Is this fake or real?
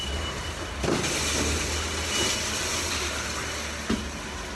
real